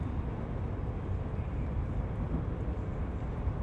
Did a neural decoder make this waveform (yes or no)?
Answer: no